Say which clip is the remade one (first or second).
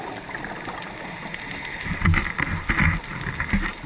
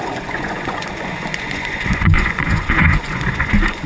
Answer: second